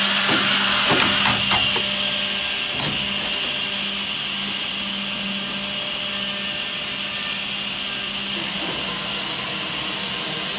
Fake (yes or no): no